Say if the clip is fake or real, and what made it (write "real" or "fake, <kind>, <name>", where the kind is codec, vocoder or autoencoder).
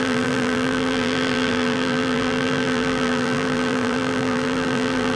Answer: fake, vocoder, BigVGAN v2